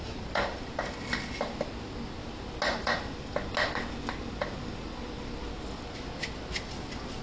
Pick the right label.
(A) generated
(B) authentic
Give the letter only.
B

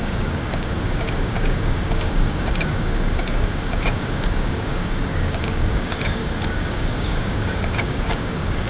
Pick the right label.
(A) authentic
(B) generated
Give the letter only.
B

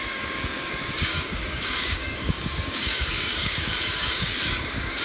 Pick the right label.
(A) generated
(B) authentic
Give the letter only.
A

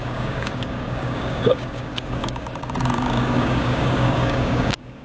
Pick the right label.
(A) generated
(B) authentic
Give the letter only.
A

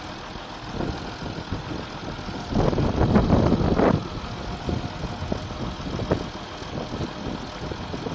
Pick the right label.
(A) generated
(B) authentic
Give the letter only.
B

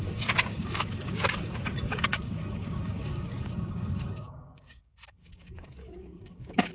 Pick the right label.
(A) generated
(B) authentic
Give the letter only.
A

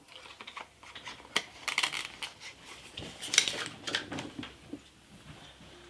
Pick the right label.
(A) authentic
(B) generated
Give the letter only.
A